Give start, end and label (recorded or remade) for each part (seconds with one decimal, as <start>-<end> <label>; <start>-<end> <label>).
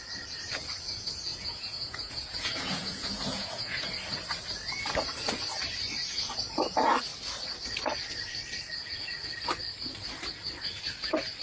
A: 0.0-1.3 recorded; 1.3-3.9 remade; 3.9-11.4 recorded